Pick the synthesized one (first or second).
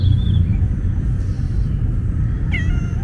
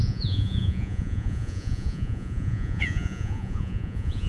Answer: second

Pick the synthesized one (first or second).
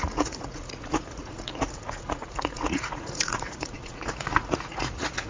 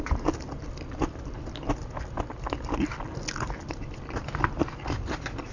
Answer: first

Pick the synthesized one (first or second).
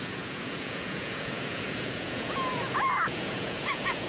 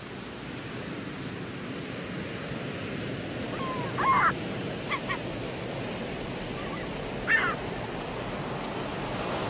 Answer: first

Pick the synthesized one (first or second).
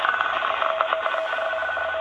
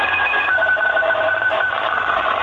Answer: second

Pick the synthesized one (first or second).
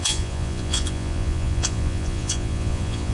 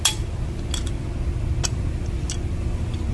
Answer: first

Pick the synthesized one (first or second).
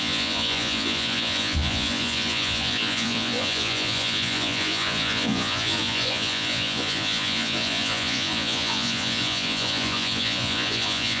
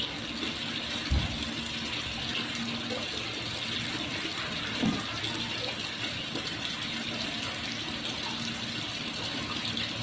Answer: first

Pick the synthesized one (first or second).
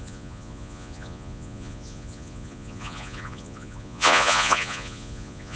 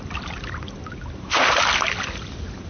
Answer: first